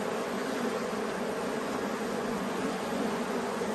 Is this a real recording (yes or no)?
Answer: no